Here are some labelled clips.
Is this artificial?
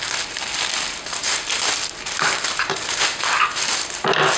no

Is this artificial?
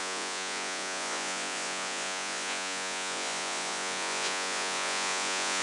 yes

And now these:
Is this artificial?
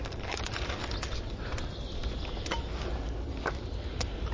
no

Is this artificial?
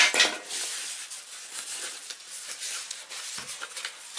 no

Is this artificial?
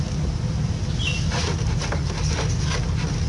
no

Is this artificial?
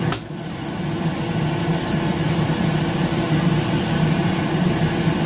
no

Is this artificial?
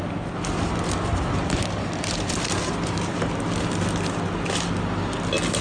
no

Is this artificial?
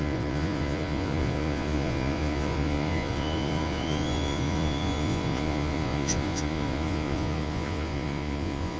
yes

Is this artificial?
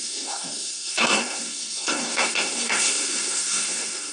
yes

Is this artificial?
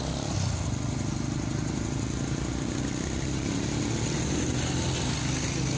no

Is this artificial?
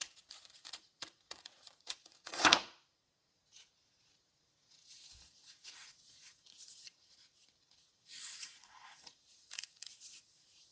yes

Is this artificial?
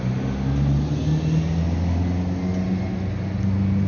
no